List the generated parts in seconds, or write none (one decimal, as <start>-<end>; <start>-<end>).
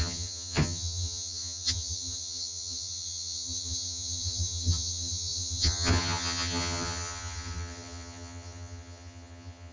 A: 0.0-9.7